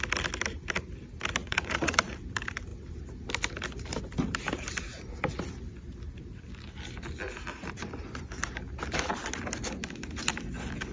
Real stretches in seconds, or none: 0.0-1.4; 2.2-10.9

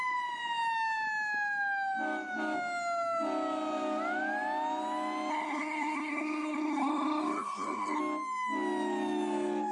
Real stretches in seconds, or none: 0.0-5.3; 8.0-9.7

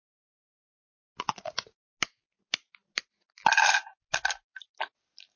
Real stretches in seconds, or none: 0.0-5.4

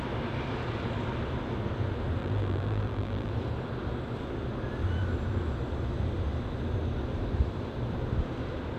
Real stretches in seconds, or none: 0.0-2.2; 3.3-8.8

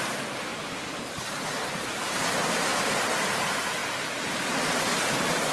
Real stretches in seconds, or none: 2.7-3.2

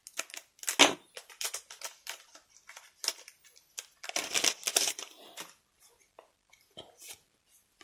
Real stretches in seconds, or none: 0.0-1.2

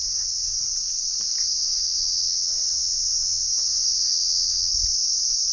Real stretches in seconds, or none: 0.6-1.4; 4.7-5.5